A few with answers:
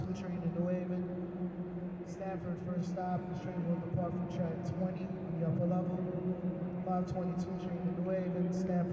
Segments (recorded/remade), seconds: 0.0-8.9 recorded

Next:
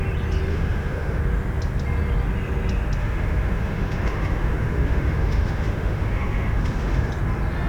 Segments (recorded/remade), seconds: 0.0-0.5 recorded; 0.5-1.2 remade; 1.2-3.0 recorded; 3.0-7.1 remade; 7.1-7.7 recorded